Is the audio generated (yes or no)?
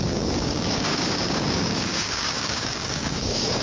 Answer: yes